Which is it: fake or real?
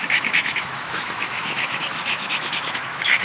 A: fake